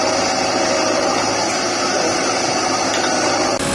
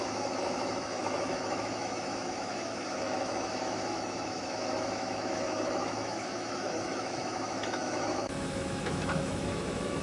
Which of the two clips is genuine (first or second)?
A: first